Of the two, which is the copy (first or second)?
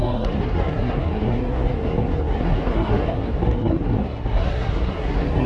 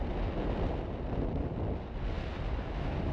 first